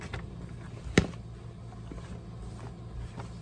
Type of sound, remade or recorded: recorded